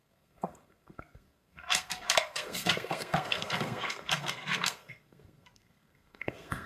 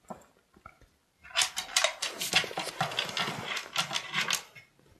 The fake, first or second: first